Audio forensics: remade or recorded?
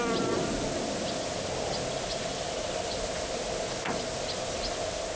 recorded